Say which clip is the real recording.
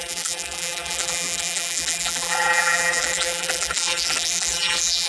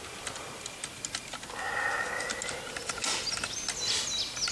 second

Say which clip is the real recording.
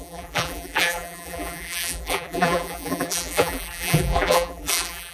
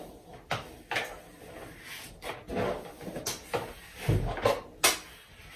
second